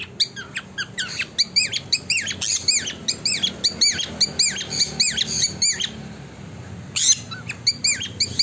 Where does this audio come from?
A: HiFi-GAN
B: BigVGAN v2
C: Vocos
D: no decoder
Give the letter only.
D